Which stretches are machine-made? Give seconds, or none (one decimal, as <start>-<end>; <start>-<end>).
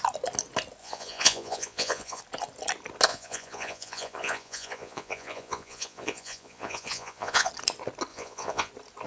0.8-2.2; 3.1-7.5; 8.1-8.7